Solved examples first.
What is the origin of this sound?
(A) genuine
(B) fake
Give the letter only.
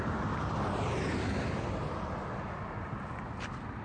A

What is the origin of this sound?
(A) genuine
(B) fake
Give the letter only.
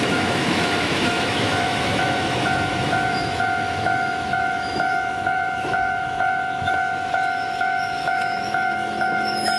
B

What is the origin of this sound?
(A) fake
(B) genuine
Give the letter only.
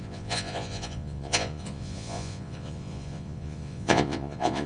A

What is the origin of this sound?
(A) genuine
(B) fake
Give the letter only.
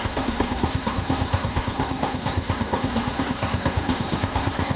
B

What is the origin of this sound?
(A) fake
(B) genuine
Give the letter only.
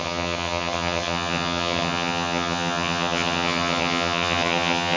A